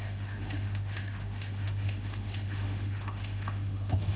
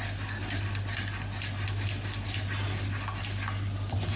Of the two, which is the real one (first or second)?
second